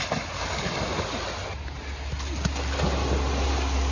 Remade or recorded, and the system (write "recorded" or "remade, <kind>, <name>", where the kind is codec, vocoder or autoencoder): recorded